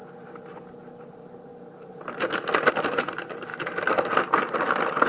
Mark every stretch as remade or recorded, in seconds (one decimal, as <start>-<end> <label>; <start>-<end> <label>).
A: 0.0-1.0 recorded; 1.0-1.5 remade; 1.5-2.7 recorded; 2.7-3.5 remade; 3.5-5.1 recorded